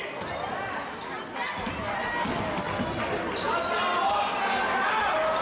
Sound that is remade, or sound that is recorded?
recorded